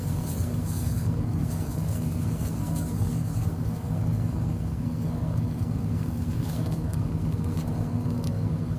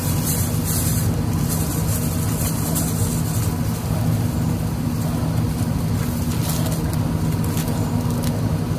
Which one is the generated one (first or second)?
first